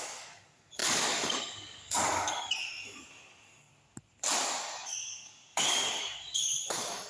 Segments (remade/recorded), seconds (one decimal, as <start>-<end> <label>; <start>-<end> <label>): 0.0-3.7 remade; 3.7-4.6 recorded; 4.6-7.1 remade